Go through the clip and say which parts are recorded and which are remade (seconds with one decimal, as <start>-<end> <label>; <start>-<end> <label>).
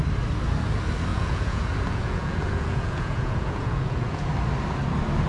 0.0-1.1 recorded; 1.1-4.3 remade; 4.3-5.3 recorded